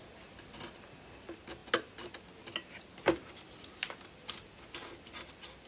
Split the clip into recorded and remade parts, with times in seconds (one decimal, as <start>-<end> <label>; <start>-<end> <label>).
0.0-5.7 recorded